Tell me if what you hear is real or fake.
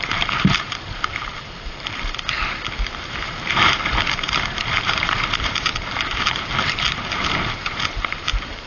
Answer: fake